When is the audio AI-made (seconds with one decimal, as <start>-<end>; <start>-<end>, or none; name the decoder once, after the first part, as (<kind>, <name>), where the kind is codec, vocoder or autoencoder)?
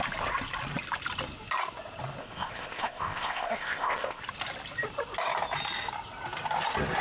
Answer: 2.2-4.2 (codec, ZipCodec)